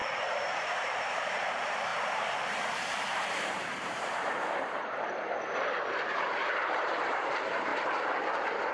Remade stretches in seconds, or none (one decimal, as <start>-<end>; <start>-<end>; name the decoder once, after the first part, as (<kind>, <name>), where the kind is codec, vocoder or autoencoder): 0.0-4.8 (vocoder, BigVGAN v2); 5.3-7.7